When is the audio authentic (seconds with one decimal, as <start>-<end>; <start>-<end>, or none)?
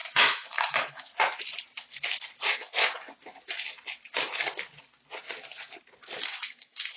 1.1-2.5; 2.9-6.2